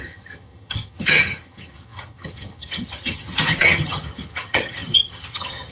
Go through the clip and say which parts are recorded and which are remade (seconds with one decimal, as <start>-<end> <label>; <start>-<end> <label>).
0.0-5.7 remade